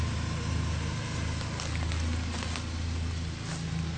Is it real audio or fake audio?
real